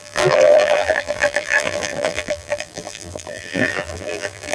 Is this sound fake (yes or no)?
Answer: yes